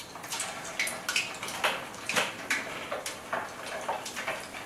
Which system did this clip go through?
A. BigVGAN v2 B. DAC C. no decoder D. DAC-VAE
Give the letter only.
C